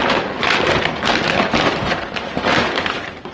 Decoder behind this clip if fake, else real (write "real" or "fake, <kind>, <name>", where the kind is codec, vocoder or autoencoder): real